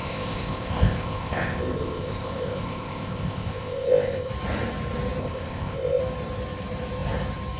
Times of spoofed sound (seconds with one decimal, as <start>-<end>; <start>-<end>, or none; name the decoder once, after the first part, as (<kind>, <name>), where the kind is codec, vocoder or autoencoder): 0.0-4.3 (codec, ZipCodec); 5.2-6.0